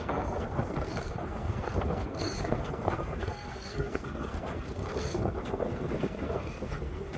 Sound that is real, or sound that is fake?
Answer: fake